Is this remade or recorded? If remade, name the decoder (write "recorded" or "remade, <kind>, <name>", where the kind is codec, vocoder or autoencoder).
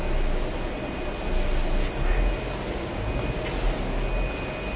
recorded